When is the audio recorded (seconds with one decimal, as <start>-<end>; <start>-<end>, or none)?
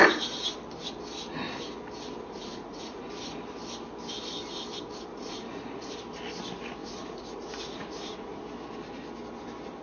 0.0-2.2; 3.1-5.1; 5.9-6.8; 8.4-9.8